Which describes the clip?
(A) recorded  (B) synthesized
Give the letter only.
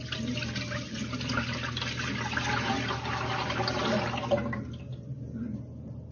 A